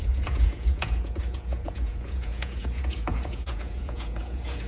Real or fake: fake